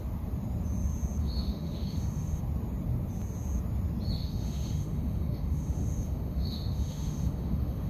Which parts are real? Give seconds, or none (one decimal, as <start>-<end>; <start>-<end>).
0.0-1.2; 2.4-4.2